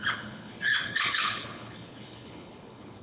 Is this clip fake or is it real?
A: fake